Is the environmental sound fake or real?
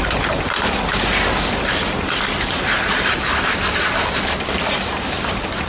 fake